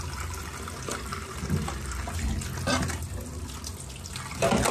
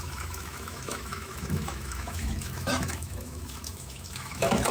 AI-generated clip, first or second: second